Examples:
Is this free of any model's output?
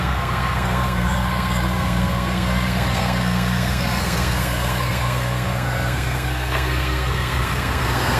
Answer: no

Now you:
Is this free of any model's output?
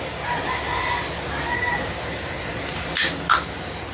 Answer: yes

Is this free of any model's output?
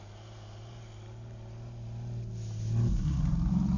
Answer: yes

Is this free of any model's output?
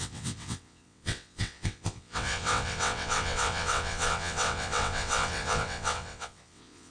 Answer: no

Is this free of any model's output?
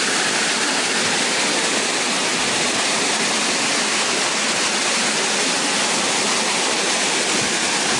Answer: yes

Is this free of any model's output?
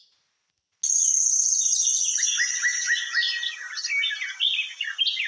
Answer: yes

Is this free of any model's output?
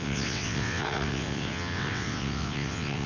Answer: no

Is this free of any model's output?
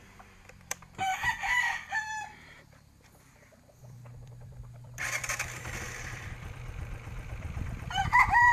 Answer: no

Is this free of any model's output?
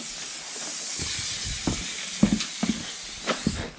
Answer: yes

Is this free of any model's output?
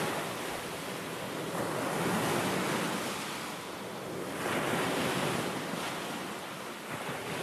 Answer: yes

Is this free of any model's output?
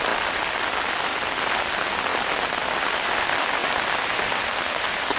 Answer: yes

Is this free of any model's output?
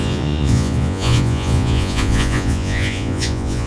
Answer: no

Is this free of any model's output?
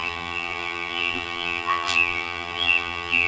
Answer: no